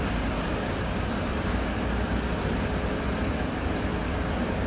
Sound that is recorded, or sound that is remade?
recorded